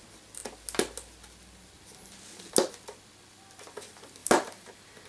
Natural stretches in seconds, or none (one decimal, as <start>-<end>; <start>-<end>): 0.0-4.2